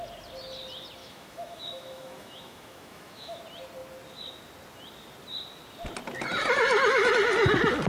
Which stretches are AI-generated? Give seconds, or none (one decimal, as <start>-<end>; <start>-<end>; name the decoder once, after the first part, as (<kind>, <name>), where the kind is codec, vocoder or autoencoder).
1.0-3.4 (autoencoder, DAC-VAE)